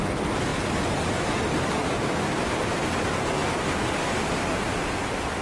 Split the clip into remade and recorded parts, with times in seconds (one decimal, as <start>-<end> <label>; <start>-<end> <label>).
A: 0.0-5.4 recorded